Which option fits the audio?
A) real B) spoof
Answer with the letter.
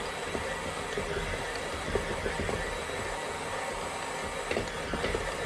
A